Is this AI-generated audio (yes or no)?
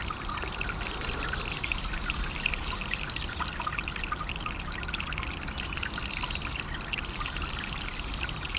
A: no